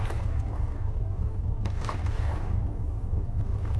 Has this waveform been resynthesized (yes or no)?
yes